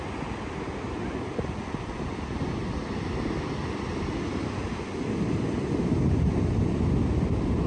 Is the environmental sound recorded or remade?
recorded